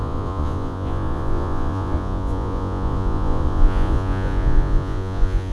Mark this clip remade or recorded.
remade